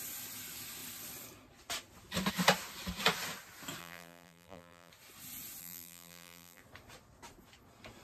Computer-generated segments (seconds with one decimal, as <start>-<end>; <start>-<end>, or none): 3.8-4.9; 5.6-6.6